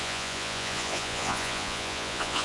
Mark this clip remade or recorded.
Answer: remade